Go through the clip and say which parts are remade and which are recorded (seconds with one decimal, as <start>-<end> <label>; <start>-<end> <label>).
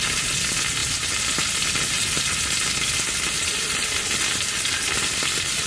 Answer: 0.0-5.7 recorded